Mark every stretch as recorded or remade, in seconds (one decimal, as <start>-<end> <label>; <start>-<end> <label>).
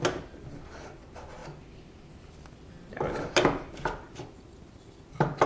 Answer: 0.0-5.5 recorded